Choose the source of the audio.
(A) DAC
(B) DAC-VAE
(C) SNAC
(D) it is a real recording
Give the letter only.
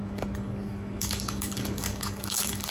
A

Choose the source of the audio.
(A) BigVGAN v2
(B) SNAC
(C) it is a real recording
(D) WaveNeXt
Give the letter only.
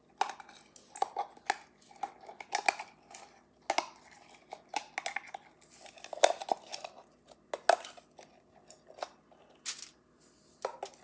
C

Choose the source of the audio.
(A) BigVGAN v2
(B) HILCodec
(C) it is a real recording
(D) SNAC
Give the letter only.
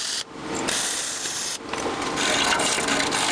C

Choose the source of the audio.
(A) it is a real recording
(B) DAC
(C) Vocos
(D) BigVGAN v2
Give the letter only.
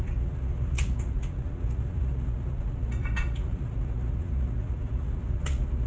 C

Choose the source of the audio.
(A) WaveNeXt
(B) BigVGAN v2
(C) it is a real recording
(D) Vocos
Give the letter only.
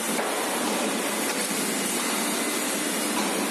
C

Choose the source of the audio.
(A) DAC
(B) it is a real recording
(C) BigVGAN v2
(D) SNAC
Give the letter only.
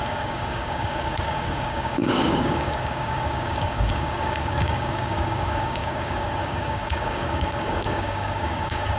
A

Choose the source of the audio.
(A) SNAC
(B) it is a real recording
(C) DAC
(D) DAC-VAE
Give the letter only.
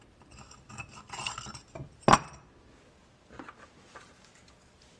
B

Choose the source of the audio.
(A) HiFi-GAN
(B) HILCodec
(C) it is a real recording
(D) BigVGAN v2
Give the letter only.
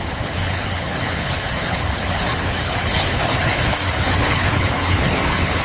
B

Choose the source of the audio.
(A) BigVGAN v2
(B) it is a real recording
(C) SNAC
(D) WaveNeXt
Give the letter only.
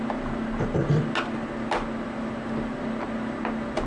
B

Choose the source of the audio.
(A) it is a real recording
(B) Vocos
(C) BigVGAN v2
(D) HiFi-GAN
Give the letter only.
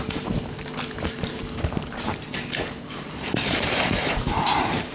C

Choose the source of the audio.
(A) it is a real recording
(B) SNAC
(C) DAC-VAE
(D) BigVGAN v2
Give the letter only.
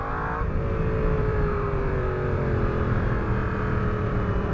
D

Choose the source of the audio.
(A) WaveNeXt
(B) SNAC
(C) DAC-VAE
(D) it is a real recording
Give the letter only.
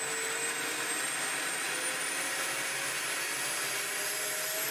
D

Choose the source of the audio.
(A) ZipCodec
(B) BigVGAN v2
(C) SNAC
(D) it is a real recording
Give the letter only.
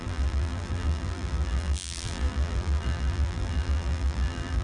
B